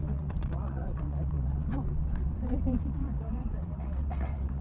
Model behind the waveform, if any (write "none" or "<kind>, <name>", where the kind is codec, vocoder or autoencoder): vocoder, WaveNeXt